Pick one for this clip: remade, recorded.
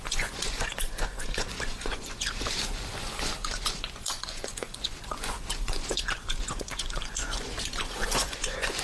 remade